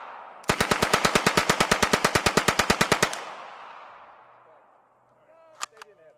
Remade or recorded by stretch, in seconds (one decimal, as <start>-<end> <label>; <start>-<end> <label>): 0.0-6.2 recorded

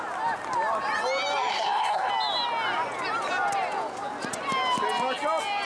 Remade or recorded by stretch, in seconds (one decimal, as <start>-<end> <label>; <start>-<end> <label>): 0.0-1.5 recorded; 1.5-2.1 remade; 2.1-5.7 recorded